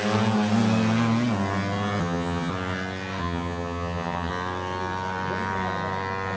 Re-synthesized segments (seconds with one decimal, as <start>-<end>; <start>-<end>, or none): 2.0-2.5; 3.2-4.3